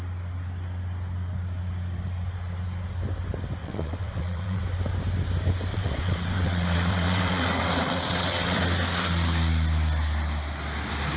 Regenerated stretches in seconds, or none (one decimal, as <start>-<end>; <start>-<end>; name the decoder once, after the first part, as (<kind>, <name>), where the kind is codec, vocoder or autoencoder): 3.6-4.6 (vocoder, WaveNeXt); 5.7-8.6